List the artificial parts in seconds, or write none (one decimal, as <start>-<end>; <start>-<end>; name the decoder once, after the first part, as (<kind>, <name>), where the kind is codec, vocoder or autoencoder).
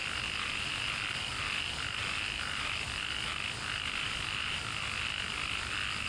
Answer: none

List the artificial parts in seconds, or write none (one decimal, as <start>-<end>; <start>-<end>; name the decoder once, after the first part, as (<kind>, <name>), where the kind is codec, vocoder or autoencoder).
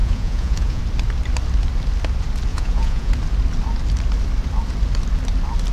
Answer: 0.0-0.8 (vocoder, Vocos); 2.5-3.1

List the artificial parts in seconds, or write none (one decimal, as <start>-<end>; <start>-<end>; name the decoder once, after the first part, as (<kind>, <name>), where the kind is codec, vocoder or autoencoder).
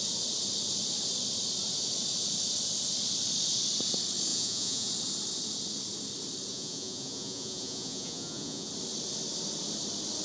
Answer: 4.3-4.9 (vocoder, Vocos); 6.5-8.7